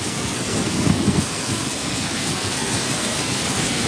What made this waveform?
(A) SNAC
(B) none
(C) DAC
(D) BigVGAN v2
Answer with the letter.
A